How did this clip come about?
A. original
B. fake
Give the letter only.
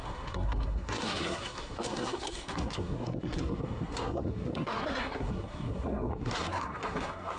B